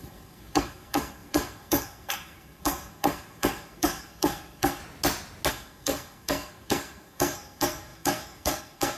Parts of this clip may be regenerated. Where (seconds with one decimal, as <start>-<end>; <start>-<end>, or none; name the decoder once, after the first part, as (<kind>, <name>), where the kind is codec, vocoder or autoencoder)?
0.0-4.8 (codec, SNAC); 5.5-9.0